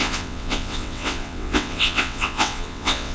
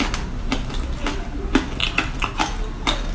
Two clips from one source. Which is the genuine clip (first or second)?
second